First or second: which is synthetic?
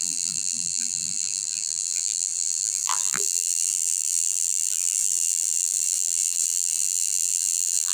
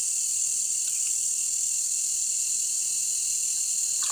first